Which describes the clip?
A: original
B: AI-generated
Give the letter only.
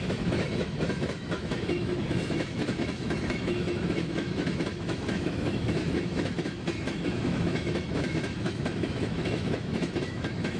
B